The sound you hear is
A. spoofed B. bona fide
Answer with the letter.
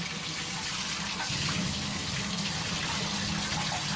B